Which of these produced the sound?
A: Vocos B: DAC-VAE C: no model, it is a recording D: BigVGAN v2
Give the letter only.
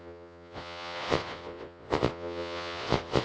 A